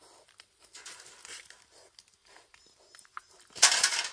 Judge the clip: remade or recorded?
recorded